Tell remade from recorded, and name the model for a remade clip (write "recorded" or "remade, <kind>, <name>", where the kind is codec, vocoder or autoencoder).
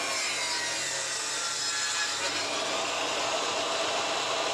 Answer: recorded